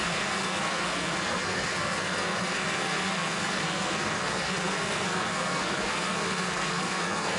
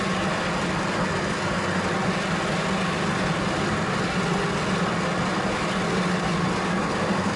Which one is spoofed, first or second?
first